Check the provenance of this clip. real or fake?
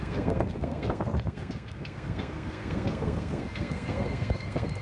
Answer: fake